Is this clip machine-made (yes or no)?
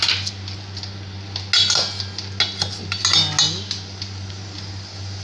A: no